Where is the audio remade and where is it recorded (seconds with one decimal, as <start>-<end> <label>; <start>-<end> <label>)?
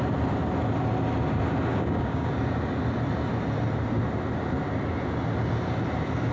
0.0-1.7 recorded; 1.7-2.3 remade; 2.3-6.3 recorded